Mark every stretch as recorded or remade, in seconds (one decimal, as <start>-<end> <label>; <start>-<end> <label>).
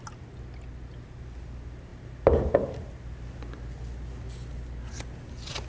0.0-5.7 recorded